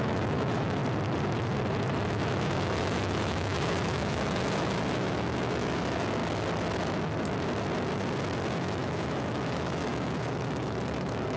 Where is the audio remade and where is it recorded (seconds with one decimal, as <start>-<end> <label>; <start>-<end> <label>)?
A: 0.0-0.8 remade; 0.8-2.1 recorded; 2.1-6.2 remade; 6.2-8.5 recorded; 8.5-11.4 remade